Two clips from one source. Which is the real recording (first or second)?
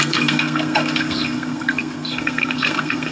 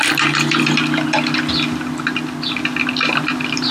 second